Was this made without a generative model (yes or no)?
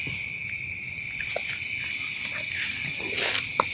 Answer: yes